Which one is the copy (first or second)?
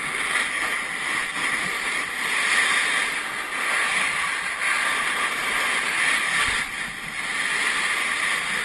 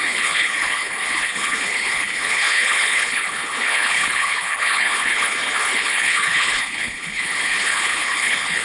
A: second